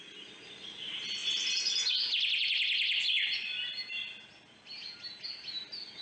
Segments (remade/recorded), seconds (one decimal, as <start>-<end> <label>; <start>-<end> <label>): 0.0-6.0 recorded